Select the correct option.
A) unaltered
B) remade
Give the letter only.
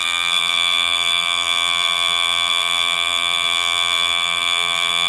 B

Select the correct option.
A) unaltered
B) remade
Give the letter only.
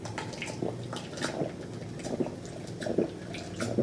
A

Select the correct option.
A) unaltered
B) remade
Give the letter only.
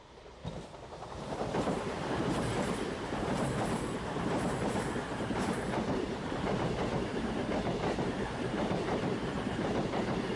B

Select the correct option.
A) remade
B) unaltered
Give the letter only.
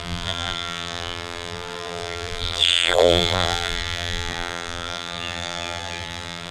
A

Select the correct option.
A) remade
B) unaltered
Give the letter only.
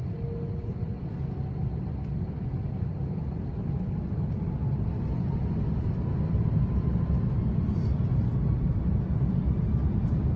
B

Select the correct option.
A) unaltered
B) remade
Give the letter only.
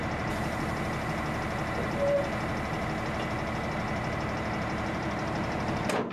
A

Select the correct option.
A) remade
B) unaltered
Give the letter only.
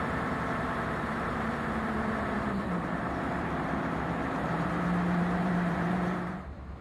A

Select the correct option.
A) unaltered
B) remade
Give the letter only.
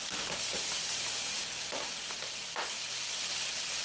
A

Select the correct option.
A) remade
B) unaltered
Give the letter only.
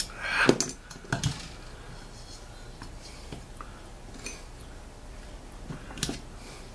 B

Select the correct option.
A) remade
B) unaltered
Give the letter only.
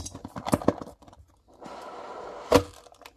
B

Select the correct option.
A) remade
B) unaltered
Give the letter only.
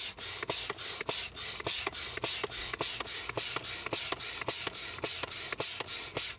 B